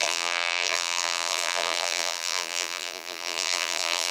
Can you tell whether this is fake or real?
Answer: fake